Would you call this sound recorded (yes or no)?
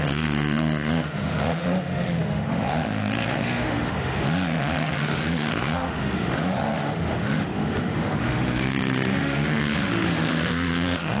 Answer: no